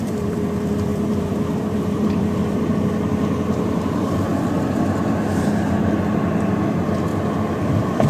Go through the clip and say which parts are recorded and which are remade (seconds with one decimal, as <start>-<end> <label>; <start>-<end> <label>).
0.0-4.3 remade; 4.3-6.5 recorded; 6.5-7.1 remade; 7.1-8.1 recorded